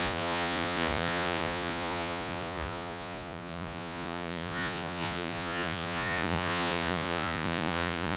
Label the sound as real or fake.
fake